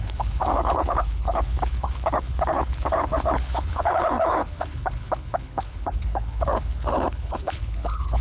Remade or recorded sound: remade